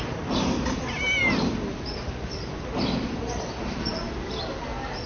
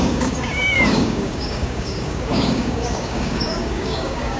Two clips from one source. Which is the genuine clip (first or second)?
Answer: first